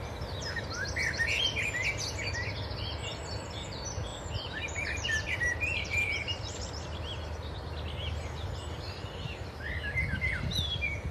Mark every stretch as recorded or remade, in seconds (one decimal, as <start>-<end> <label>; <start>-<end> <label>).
0.0-4.1 recorded; 4.1-6.7 remade; 6.7-11.1 recorded